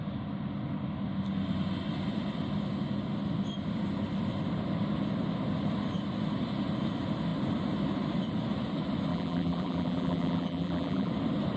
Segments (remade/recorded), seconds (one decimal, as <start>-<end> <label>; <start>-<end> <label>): 0.0-9.1 recorded; 9.1-11.1 remade; 11.1-11.6 recorded